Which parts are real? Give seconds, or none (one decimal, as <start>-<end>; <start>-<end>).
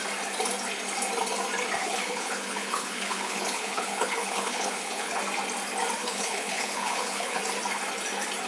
0.0-1.8; 5.2-6.0; 7.4-8.5